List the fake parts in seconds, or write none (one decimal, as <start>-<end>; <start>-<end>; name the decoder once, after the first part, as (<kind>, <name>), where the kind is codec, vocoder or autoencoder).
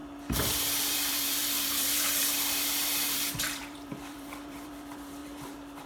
0.0-5.9 (vocoder, BigVGAN v2)